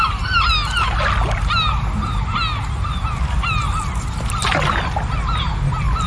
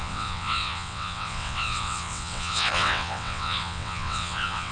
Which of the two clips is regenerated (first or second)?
second